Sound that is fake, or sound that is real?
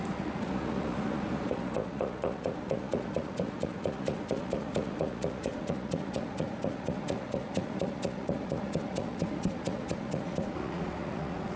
fake